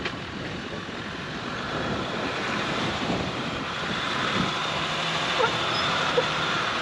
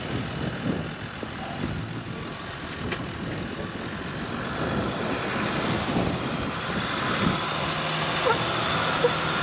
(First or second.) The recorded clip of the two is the second